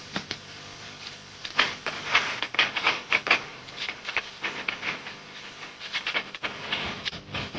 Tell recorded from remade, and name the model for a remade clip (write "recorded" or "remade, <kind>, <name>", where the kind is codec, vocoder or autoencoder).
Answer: remade, codec, DAC